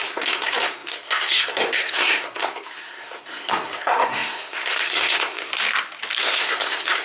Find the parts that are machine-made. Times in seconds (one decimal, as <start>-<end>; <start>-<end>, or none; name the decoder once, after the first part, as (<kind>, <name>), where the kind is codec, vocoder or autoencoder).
0.0-5.5 (codec, SNAC); 6.2-7.0